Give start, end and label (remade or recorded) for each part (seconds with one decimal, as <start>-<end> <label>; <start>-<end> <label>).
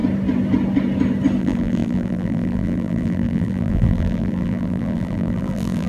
0.0-1.4 recorded; 1.4-5.9 remade